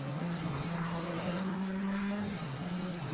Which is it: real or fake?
fake